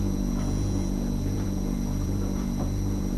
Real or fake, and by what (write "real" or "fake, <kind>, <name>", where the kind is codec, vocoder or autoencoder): fake, vocoder, Vocos